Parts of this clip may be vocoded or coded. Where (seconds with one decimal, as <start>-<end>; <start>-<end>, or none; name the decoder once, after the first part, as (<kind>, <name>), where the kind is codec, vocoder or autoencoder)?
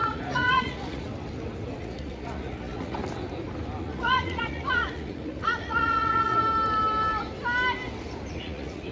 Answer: 0.0-1.1 (vocoder, Vocos); 1.8-3.0; 3.8-6.4; 8.3-8.9